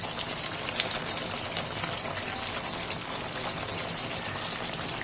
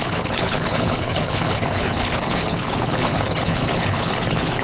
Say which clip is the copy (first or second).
second